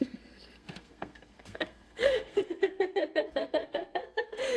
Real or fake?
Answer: fake